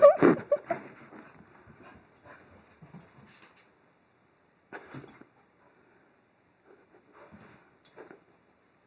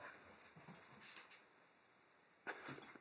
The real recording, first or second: second